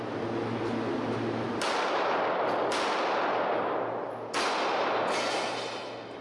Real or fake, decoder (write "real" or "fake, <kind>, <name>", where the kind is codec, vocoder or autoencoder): real